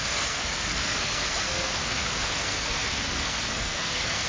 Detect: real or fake fake